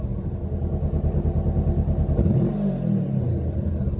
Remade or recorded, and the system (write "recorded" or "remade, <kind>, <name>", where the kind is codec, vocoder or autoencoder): recorded